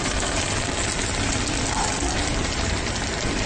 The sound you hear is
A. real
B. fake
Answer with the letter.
A